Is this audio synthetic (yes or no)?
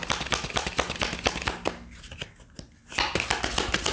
no